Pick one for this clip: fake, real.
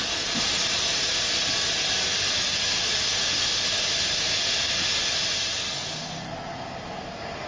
real